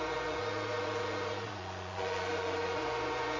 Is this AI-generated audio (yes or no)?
yes